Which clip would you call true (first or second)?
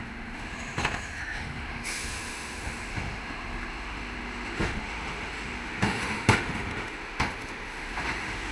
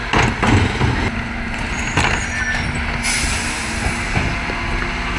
second